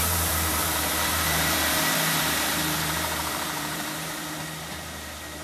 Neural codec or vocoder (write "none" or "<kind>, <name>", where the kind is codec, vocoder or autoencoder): vocoder, BigVGAN v2